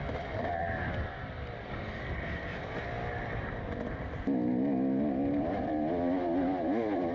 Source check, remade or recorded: recorded